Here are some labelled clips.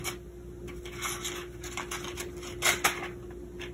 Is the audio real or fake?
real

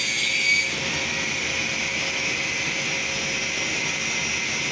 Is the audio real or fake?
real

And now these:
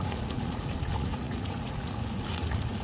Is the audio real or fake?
fake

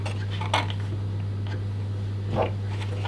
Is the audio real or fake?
real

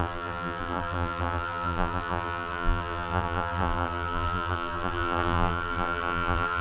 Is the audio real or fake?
fake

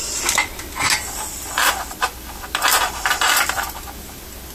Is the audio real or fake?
fake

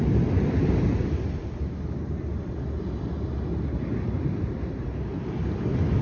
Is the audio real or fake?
real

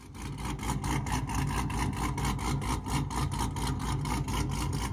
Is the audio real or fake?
real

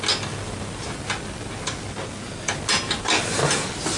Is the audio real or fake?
real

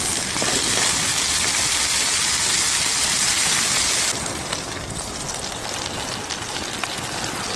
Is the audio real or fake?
real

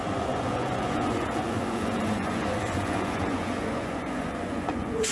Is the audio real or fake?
fake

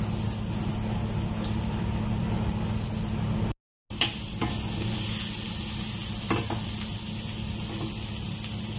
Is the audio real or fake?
real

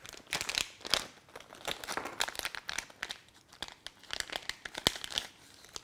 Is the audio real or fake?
real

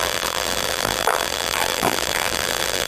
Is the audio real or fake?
fake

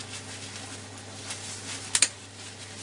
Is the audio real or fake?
real